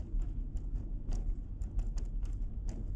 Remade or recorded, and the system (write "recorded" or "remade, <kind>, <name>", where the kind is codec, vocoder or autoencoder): recorded